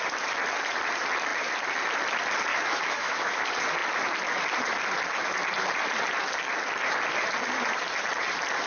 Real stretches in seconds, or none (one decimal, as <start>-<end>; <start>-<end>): 0.0-2.5; 3.3-8.7